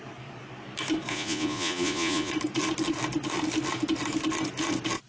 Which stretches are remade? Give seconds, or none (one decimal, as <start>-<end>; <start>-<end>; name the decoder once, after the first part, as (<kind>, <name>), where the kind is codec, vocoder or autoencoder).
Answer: 1.1-2.3 (vocoder, Vocos)